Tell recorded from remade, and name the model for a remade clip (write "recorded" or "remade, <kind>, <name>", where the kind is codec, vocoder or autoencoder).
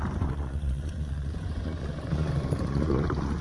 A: remade, vocoder, Vocos